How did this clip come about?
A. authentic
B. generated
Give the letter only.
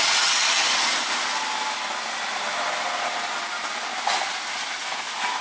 A